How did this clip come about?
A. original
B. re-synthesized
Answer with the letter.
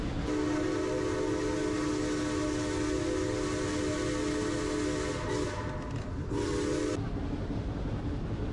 A